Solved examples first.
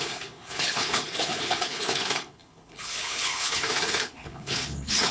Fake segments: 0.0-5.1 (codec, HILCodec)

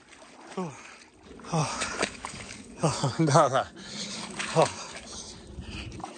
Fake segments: 1.6-5.3 (codec, DAC)

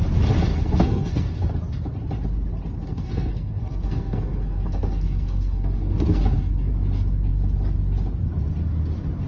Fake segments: 0.5-1.5 (codec, SNAC); 2.8-6.7

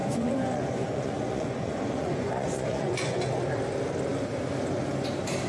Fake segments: 0.0-3.3 (vocoder, Vocos)

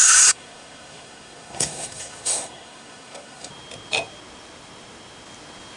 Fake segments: 0.0-3.5 (codec, SNAC)

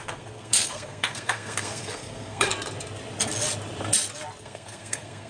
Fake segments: 0.0-2.5 (codec, SNAC); 4.4-5.3

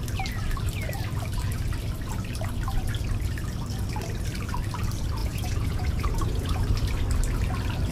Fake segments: 5.2-6.6 (vocoder, Vocos)

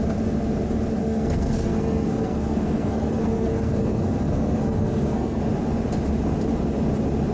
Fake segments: 1.0-5.4 (codec, SNAC)